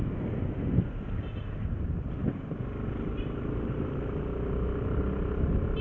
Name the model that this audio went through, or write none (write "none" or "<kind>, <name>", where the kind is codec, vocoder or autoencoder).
none